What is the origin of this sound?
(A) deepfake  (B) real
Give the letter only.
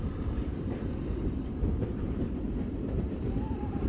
A